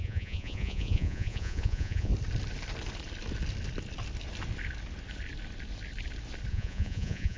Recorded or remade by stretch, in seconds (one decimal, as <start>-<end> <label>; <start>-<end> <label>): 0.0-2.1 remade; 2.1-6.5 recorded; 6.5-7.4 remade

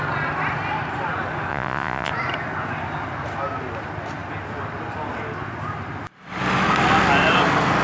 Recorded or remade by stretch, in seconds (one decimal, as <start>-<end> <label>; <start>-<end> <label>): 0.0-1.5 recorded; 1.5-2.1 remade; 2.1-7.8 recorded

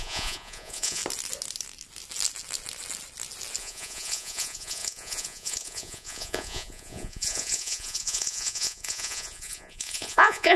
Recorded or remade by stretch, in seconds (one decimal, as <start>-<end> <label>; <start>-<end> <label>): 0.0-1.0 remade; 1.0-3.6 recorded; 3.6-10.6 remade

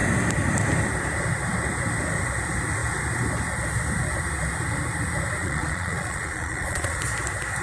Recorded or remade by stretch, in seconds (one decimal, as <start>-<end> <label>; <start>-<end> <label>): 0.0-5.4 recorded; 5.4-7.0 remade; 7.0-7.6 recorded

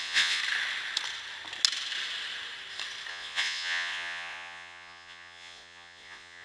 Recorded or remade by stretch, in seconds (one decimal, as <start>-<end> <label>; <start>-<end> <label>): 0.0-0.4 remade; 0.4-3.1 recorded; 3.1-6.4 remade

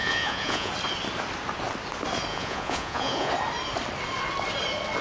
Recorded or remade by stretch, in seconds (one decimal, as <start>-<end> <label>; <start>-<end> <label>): 0.0-0.7 remade; 0.7-2.3 recorded; 2.3-3.3 remade; 3.3-5.0 recorded